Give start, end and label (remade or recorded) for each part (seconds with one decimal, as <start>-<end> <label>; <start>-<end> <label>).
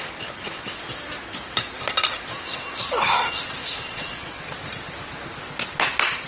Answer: 0.0-3.6 recorded; 3.6-4.5 remade; 4.5-6.3 recorded